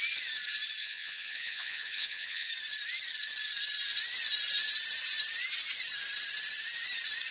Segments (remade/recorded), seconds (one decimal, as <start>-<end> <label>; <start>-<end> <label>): 0.0-0.8 recorded; 0.8-2.5 remade; 2.5-7.3 recorded